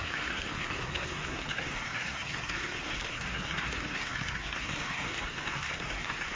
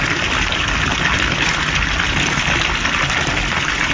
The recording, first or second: second